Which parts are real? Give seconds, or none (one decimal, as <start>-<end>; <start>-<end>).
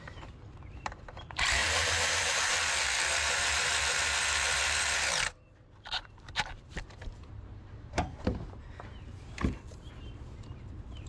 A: none